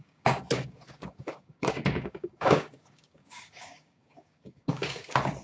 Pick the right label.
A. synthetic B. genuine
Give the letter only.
A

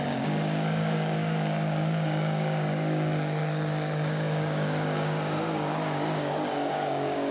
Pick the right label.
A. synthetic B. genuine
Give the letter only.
A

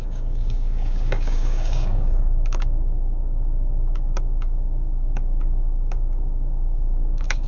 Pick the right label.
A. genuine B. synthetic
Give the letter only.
B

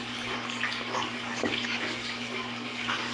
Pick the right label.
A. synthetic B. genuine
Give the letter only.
A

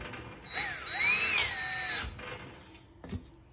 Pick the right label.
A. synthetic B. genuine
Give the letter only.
B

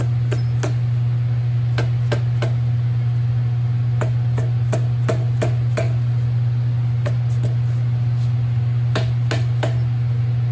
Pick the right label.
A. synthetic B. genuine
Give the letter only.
B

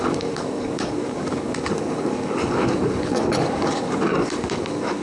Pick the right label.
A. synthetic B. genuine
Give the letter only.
A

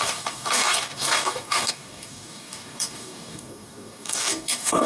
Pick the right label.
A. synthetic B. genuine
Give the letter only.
A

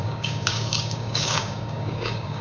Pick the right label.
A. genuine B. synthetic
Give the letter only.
B